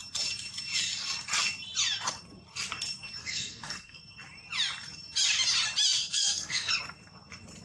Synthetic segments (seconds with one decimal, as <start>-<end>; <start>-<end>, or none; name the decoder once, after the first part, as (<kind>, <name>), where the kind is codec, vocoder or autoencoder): 3.2-4.0 (codec, SNAC); 6.0-6.7